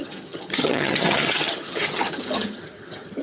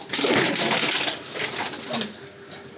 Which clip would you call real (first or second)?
second